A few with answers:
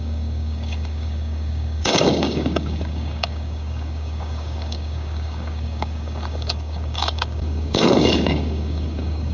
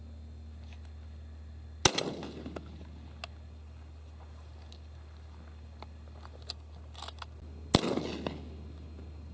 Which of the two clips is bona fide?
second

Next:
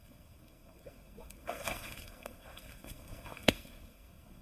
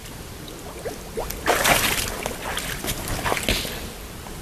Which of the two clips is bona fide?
second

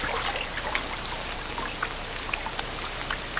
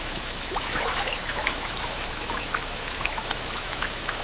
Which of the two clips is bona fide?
first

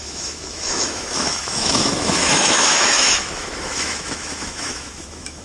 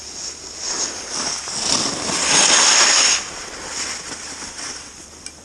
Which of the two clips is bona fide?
second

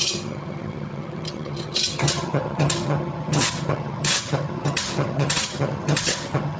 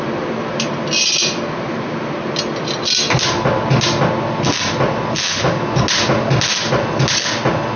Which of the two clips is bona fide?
second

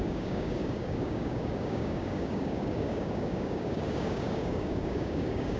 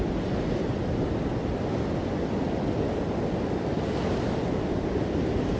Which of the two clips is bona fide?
second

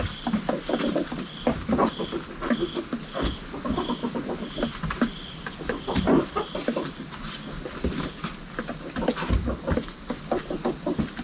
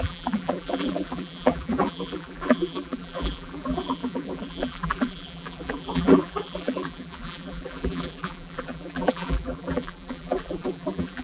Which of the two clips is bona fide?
first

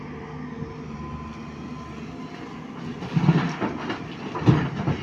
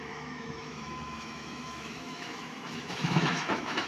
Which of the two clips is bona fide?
first